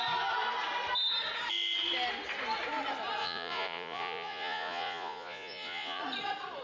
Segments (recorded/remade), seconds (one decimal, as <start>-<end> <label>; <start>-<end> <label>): 0.0-3.2 recorded; 3.2-6.0 remade; 6.0-6.6 recorded